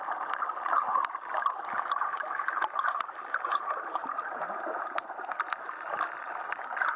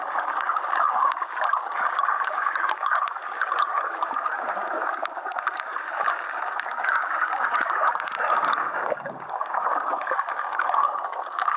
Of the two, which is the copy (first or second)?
second